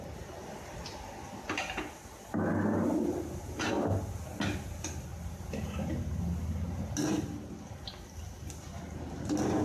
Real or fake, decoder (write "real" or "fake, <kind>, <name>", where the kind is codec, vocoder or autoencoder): real